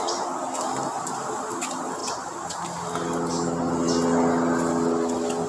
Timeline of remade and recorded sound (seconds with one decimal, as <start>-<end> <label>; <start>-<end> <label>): 0.0-5.5 recorded